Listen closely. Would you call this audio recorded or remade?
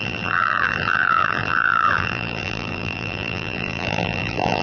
remade